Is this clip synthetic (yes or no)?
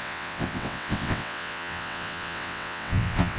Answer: yes